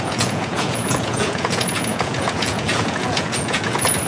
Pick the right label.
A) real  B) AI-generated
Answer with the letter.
B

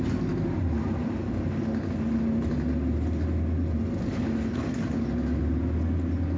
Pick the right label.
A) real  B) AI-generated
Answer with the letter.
A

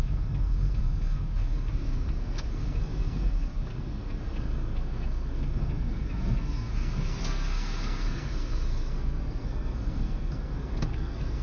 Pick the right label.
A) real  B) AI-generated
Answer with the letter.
B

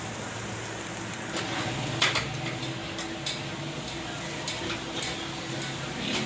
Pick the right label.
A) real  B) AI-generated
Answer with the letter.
A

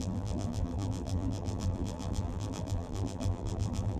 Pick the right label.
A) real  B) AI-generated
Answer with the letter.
B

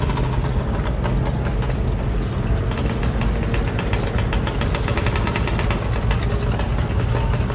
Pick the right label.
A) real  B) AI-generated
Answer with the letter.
A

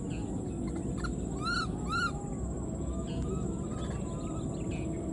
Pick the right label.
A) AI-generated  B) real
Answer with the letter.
B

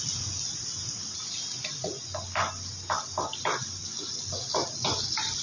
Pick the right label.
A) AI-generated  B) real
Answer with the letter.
B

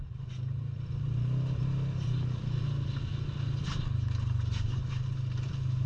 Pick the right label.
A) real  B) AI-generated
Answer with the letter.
A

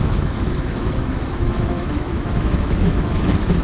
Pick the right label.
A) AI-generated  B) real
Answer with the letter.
A